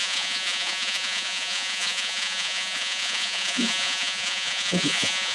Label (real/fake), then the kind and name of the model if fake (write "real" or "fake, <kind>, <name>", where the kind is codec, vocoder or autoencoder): fake, vocoder, Vocos